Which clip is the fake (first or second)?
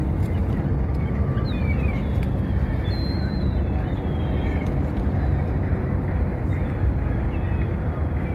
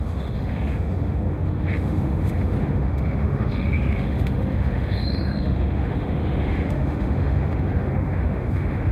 second